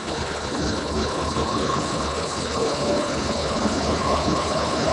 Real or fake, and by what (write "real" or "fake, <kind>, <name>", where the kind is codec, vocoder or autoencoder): fake, codec, HILCodec